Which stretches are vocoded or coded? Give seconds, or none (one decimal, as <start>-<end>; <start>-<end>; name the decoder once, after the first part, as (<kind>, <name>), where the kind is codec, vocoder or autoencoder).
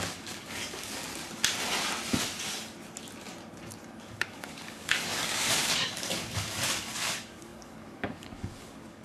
0.0-1.1 (codec, DAC); 4.0-9.0